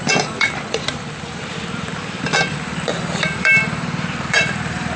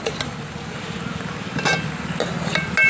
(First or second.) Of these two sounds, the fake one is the first